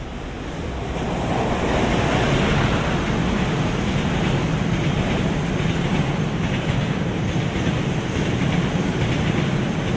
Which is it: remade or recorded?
recorded